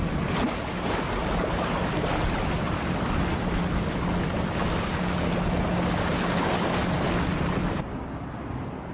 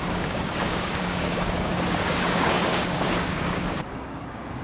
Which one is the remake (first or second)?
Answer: second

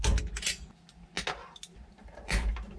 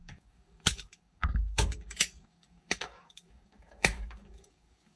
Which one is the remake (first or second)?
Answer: second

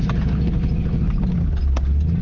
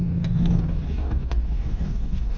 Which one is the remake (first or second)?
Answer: second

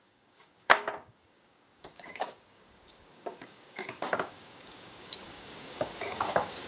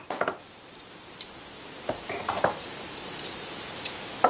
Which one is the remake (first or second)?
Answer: first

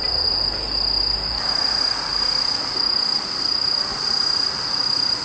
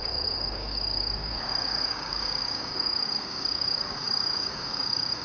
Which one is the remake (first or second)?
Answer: second